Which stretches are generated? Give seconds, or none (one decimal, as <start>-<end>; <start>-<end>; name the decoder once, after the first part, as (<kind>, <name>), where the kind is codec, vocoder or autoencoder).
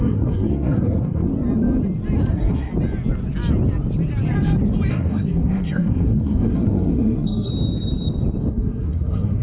0.0-1.3 (codec, SNAC); 2.3-2.7; 4.9-7.5; 8.5-9.4